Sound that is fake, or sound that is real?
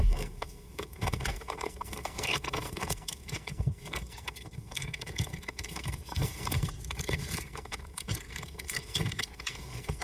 fake